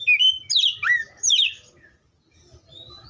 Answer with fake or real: real